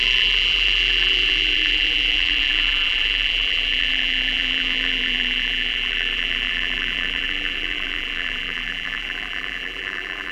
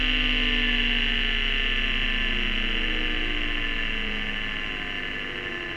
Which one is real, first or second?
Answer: second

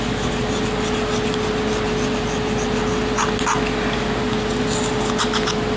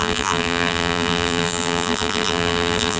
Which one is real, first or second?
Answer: first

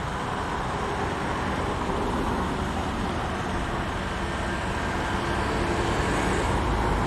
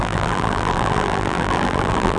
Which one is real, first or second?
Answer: first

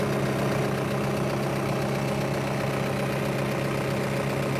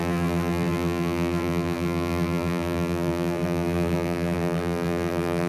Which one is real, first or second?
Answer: first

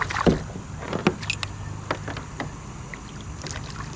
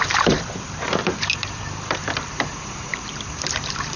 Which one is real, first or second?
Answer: first